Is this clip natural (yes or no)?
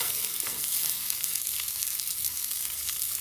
no